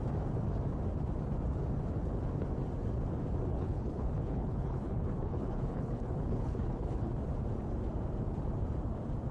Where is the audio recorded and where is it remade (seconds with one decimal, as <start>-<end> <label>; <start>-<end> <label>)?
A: 0.0-3.5 recorded; 3.5-7.1 remade; 7.1-9.3 recorded